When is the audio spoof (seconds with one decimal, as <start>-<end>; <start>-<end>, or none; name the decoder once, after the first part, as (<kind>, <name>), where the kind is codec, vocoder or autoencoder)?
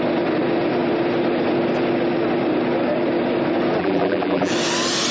3.8-4.5 (vocoder, BigVGAN v2)